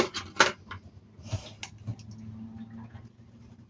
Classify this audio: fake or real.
real